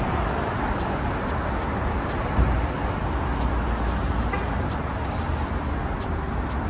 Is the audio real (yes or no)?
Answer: yes